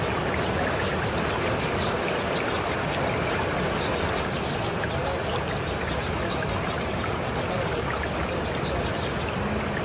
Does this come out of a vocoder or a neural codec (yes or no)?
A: no